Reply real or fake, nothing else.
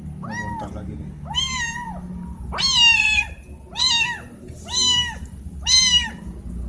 real